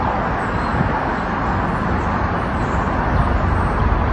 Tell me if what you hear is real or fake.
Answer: real